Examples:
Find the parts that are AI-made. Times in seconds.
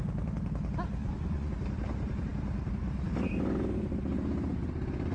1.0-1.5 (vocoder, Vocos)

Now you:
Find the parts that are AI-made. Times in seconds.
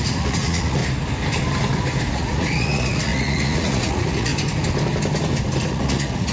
0.0-0.8 (vocoder, Vocos); 2.1-4.3; 5.7-6.3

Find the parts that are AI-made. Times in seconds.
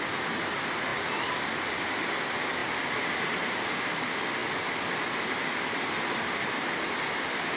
none